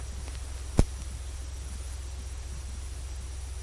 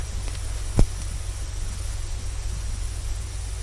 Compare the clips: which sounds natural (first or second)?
first